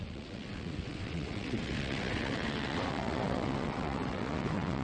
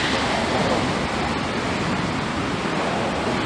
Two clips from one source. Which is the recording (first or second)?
second